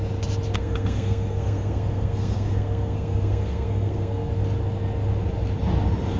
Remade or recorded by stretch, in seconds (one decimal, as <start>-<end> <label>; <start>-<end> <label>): 0.0-0.6 recorded; 0.6-4.3 remade; 4.3-6.2 recorded